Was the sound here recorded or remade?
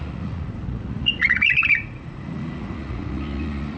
remade